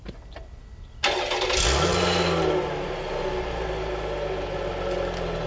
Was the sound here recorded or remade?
recorded